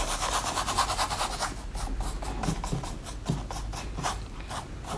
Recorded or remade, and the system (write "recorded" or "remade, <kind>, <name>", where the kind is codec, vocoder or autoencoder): recorded